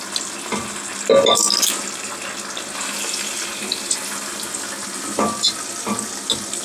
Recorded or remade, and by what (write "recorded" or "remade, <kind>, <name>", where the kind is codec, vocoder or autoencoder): recorded